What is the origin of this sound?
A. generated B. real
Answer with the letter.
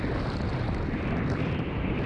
B